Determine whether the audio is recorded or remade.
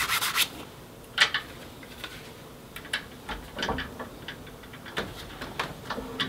remade